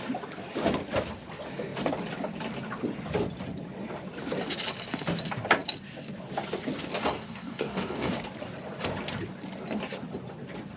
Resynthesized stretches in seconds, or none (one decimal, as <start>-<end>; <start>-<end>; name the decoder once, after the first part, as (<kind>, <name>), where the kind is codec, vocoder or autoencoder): 7.0-8.1 (codec, DAC)

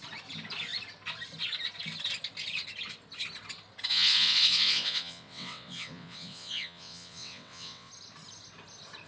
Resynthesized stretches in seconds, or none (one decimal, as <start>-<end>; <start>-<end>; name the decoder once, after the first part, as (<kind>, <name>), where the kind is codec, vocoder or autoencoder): 3.9-7.9 (vocoder, WaveNeXt)

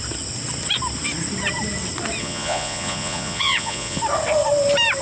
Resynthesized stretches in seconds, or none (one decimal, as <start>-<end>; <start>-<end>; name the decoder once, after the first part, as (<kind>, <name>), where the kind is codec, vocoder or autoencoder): 2.2-4.0 (vocoder, Vocos)